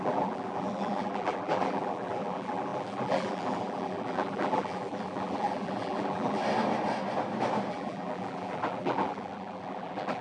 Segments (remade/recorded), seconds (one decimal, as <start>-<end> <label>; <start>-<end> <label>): 0.0-6.4 remade; 6.4-7.7 recorded; 7.7-10.2 remade